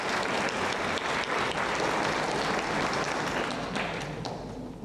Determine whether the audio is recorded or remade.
recorded